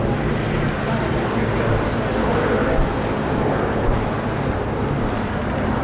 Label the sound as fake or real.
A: real